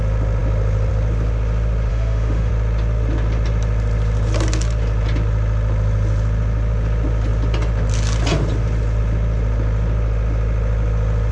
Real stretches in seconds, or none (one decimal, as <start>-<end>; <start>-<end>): 0.0-1.9; 2.5-11.3